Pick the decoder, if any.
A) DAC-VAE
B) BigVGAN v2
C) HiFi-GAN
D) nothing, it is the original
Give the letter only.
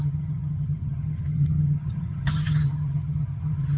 C